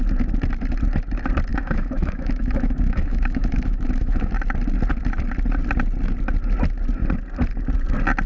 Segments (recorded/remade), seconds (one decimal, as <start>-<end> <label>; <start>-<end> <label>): 0.0-1.5 recorded; 1.5-4.3 remade; 4.3-8.3 recorded